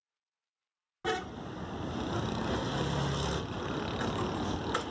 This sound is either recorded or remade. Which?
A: recorded